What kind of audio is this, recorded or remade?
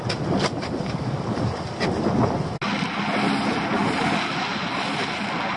recorded